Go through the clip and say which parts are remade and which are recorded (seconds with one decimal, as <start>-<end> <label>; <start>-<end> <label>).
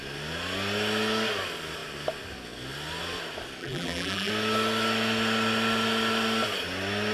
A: 0.0-3.6 recorded; 3.6-4.3 remade; 4.3-7.1 recorded